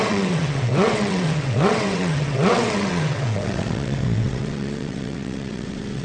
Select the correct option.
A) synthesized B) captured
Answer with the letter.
A